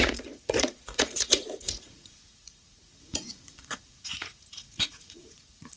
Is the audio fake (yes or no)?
yes